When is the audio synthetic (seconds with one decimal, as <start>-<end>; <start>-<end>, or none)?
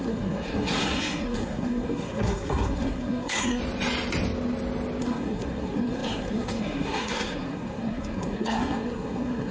0.0-3.6; 5.0-9.5